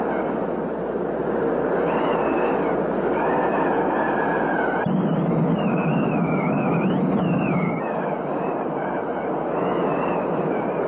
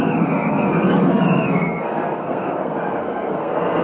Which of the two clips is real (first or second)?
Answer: first